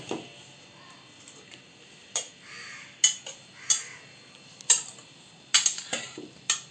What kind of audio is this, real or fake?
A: real